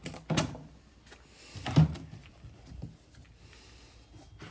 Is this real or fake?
real